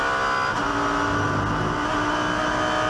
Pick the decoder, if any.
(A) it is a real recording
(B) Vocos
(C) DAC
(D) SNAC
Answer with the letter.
A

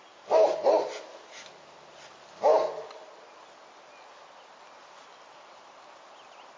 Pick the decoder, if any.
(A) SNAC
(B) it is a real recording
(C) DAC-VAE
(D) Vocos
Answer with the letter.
B